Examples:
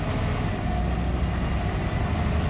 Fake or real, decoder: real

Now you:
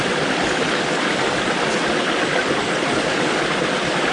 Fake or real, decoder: real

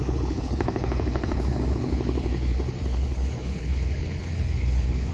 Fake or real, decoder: fake, codec, HILCodec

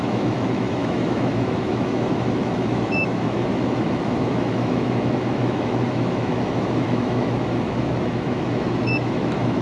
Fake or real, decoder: fake, autoencoder, DAC-VAE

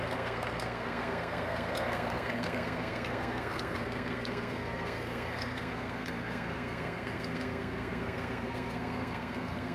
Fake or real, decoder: fake, codec, SNAC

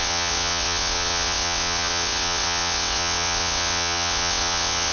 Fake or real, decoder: fake, vocoder, WaveNeXt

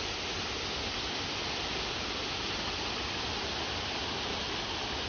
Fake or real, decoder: real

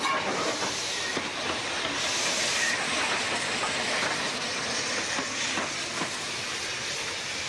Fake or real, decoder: real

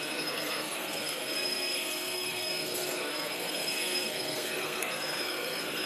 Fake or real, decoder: fake, codec, SNAC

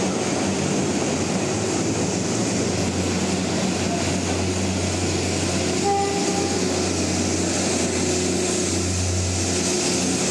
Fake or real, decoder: real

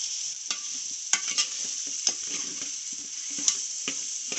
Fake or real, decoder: fake, vocoder, BigVGAN v2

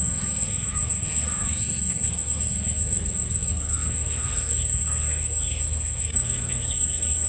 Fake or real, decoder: fake, codec, SNAC